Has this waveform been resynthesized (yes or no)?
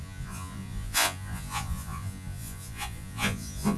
yes